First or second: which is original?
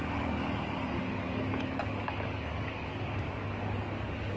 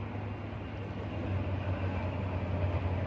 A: second